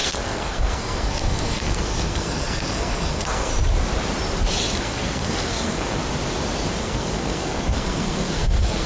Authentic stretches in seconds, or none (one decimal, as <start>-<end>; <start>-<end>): 3.5-4.8; 6.0-6.8